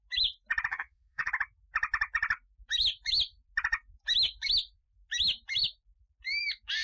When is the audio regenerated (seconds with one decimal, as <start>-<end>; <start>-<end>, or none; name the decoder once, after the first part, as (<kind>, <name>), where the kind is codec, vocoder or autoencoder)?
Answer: 0.7-1.3 (vocoder, WaveNeXt)